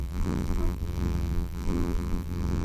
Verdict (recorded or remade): remade